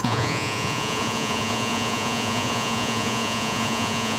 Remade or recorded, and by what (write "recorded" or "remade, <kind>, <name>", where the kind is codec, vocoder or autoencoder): remade, vocoder, Vocos